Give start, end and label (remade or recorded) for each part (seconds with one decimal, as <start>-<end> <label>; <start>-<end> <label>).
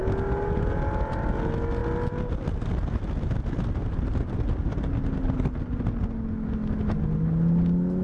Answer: 0.0-8.0 recorded